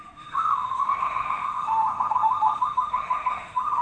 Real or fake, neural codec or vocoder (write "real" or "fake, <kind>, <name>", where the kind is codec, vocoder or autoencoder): fake, autoencoder, DAC-VAE